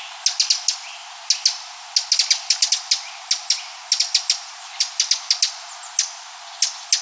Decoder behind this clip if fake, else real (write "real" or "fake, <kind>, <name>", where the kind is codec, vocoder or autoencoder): real